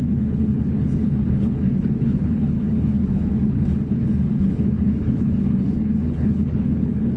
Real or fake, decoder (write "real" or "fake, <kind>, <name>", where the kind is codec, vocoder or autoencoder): fake, codec, HILCodec